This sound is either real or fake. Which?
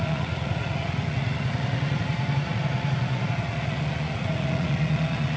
fake